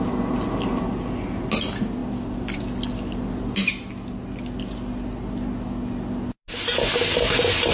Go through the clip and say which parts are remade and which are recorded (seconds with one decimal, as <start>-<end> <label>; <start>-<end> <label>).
0.0-2.0 recorded; 2.0-2.6 remade; 2.6-7.7 recorded